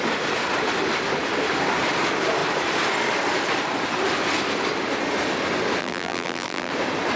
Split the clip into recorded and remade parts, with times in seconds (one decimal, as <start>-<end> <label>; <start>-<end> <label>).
0.0-5.8 recorded; 5.8-6.7 remade; 6.7-7.2 recorded